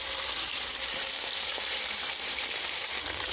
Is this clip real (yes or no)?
no